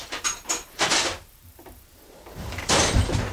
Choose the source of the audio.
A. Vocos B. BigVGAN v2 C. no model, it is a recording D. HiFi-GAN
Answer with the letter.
B